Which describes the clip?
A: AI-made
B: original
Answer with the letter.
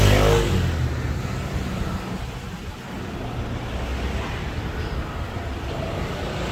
B